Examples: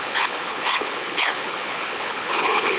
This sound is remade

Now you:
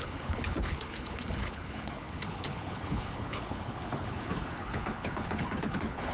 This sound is remade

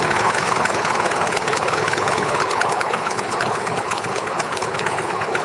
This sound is remade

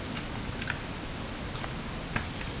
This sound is recorded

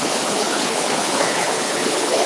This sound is remade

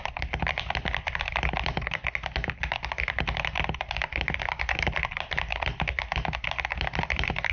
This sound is recorded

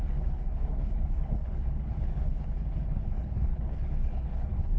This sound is remade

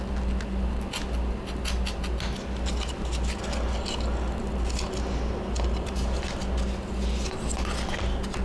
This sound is recorded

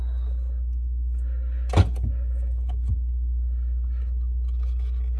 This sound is recorded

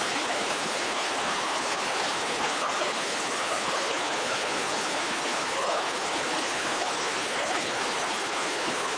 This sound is remade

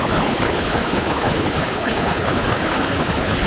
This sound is remade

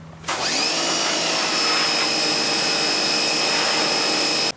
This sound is recorded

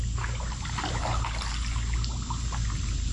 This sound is recorded